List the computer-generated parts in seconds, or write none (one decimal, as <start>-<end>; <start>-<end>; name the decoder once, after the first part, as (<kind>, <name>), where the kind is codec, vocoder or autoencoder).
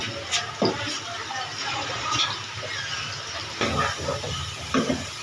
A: 1.6-2.2 (vocoder, Vocos)